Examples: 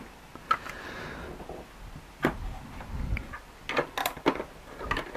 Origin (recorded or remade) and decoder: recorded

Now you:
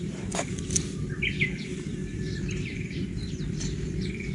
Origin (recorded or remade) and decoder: remade, vocoder, BigVGAN v2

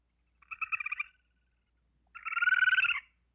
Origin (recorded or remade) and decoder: recorded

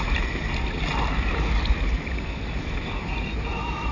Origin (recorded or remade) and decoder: recorded